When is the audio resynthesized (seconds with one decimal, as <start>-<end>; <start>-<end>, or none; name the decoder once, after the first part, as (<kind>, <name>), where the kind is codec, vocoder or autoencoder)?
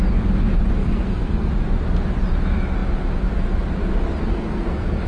0.8-1.5 (codec, SNAC); 4.3-5.1